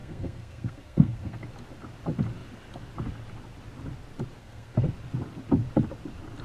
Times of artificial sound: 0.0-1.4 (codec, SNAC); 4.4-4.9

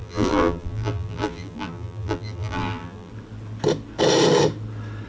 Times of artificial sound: 0.0-3.1 (vocoder, BigVGAN v2)

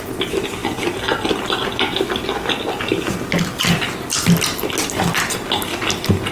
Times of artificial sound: none

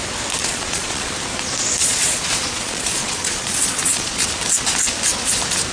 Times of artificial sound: 0.4-1.1 (vocoder, Vocos); 1.8-4.2

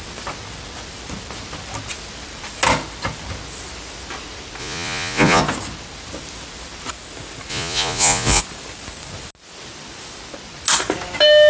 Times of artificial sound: 4.6-5.4 (vocoder, Vocos); 7.5-8.4

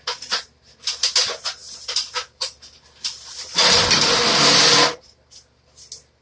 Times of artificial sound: none